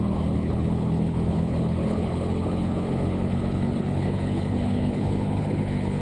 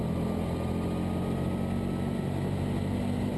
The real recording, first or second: second